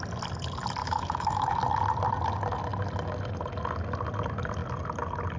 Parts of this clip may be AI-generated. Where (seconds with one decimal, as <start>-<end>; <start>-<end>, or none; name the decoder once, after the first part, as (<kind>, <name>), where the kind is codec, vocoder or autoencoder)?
0.8-1.6 (autoencoder, DAC-VAE)